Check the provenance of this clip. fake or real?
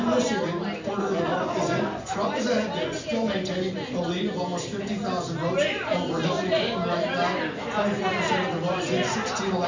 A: real